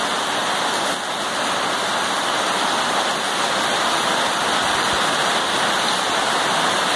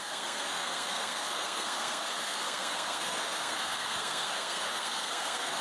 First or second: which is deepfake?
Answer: second